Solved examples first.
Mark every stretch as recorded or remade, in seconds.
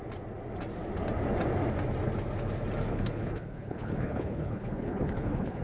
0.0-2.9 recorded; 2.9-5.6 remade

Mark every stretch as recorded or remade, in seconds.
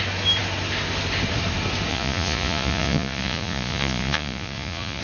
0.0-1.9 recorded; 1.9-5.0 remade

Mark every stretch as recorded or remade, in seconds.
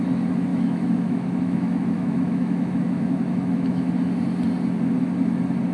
0.0-0.5 recorded; 0.5-3.9 remade; 3.9-5.7 recorded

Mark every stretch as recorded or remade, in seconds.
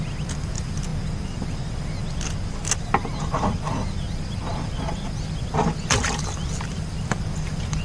0.0-7.8 recorded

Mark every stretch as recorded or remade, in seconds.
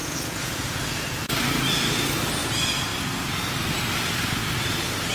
0.0-1.3 remade; 1.3-5.1 recorded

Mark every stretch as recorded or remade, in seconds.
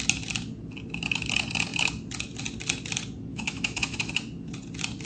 0.0-3.3 recorded; 3.3-4.1 remade; 4.1-5.1 recorded